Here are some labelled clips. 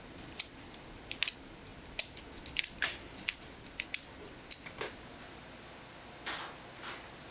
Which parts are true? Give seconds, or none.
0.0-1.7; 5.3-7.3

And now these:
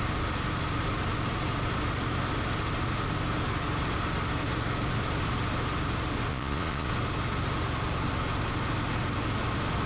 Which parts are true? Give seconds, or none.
0.0-6.3; 6.9-9.9